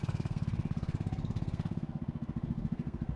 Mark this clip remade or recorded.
remade